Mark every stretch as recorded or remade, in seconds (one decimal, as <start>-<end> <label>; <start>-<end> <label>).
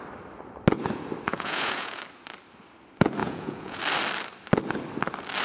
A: 0.0-1.3 recorded; 1.3-2.0 remade; 2.0-3.2 recorded; 3.2-3.8 remade; 3.8-5.4 recorded